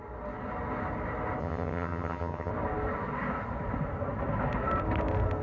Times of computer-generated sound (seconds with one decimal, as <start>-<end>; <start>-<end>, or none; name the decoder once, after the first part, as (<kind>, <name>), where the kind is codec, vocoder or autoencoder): 1.4-2.5 (vocoder, HiFi-GAN)